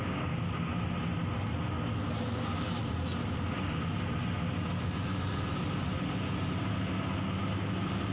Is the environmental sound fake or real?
real